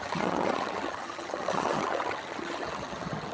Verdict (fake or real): fake